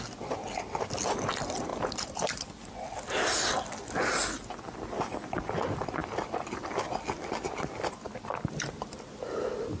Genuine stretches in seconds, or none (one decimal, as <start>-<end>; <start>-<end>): 0.0-9.8